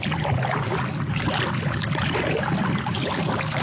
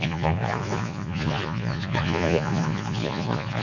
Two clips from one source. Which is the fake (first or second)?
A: second